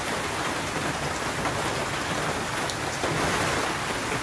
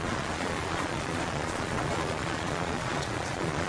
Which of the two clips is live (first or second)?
first